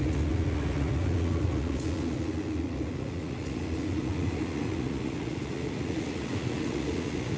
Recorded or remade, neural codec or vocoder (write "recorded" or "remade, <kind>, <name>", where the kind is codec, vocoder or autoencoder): remade, vocoder, Vocos